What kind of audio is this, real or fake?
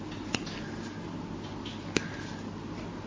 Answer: real